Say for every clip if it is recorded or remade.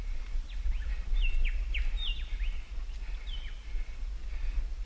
recorded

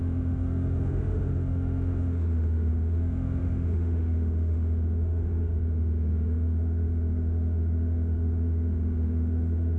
remade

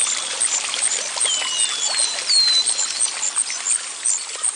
recorded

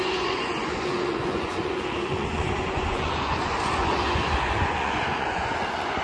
remade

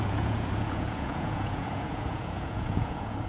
remade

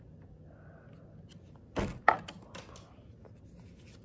recorded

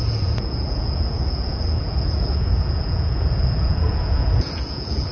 remade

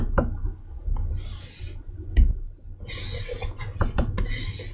recorded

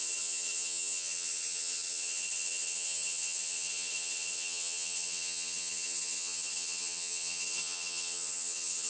remade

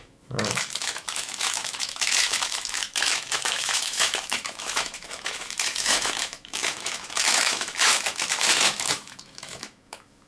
remade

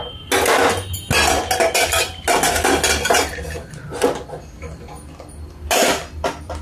recorded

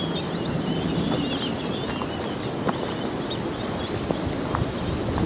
recorded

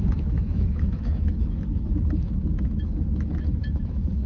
remade